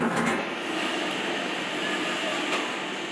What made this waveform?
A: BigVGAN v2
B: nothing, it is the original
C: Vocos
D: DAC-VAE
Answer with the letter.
B